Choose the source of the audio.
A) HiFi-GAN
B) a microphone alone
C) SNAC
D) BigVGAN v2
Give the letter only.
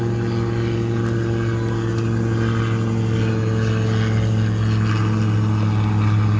B